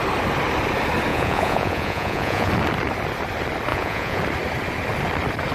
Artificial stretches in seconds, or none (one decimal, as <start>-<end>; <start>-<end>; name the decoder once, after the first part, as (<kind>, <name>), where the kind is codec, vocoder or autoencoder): 1.1-2.5 (vocoder, Vocos); 3.7-4.2